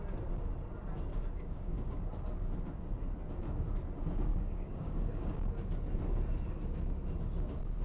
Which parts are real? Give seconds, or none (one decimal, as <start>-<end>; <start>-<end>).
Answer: 0.0-1.1; 2.0-4.3; 5.5-7.8